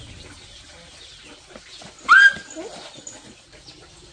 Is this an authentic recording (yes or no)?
yes